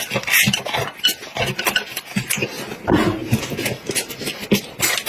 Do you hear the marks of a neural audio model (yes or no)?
no